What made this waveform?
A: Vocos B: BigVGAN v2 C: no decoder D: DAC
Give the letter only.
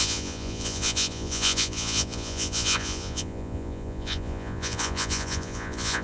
A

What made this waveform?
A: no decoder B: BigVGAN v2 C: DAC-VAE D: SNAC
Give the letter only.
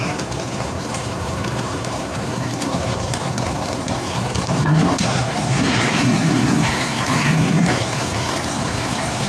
D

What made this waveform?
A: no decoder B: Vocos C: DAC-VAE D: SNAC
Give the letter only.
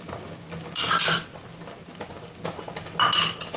A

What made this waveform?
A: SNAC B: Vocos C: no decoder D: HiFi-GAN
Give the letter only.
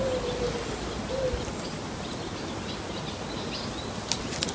C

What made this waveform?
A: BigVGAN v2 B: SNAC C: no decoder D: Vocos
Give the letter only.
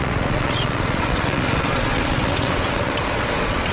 D